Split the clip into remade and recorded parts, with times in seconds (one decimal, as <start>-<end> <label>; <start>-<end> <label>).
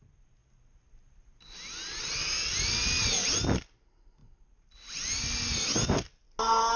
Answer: 0.0-6.8 recorded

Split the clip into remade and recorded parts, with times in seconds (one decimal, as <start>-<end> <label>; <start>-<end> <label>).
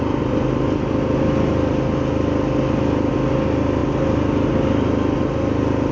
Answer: 0.0-5.9 recorded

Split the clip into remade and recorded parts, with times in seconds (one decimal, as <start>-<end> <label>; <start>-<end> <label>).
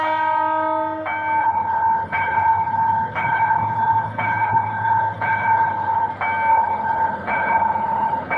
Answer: 0.0-1.4 recorded; 1.4-6.1 remade; 6.1-6.5 recorded; 6.5-8.4 remade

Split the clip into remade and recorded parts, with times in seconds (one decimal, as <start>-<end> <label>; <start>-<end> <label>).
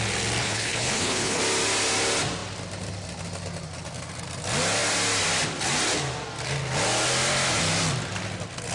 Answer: 0.0-0.4 recorded; 0.4-1.4 remade; 1.4-8.7 recorded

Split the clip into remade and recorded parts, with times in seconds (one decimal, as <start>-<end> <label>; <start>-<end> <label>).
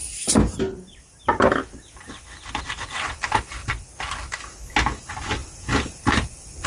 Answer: 0.0-6.7 recorded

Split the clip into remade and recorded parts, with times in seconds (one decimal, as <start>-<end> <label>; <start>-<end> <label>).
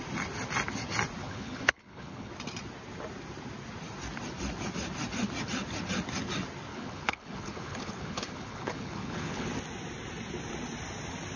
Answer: 0.0-1.2 recorded; 1.2-2.3 remade; 2.3-6.7 recorded; 6.7-9.5 remade; 9.5-11.4 recorded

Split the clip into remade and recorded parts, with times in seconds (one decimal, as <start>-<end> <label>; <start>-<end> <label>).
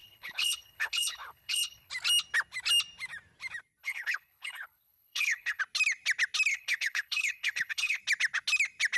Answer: 0.0-1.9 remade; 1.9-3.8 recorded; 3.8-5.6 remade; 5.6-6.5 recorded; 6.5-8.0 remade; 8.0-9.0 recorded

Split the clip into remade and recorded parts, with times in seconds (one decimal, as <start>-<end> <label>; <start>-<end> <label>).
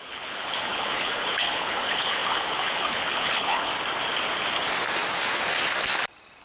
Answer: 0.0-3.7 remade; 3.7-6.4 recorded